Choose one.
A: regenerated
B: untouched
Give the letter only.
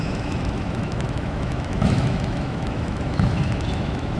A